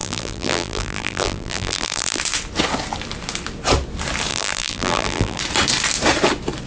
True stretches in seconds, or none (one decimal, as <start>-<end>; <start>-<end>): 2.2-4.3; 5.4-6.7